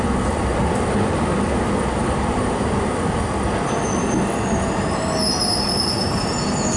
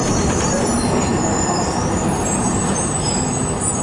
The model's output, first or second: second